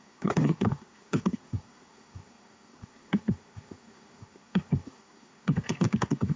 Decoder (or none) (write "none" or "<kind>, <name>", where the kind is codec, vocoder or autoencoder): codec, SNAC